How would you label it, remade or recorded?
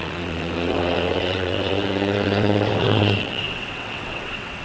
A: remade